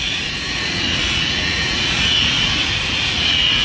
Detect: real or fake fake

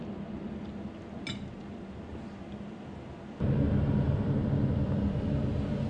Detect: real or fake real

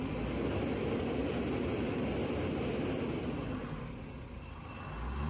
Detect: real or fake real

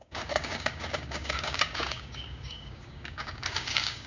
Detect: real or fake fake